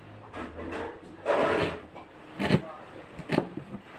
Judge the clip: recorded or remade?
recorded